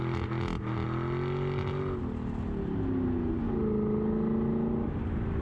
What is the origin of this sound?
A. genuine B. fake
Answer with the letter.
A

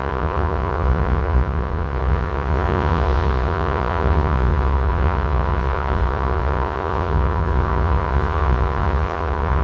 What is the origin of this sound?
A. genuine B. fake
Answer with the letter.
B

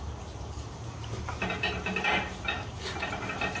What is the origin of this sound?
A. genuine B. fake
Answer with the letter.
B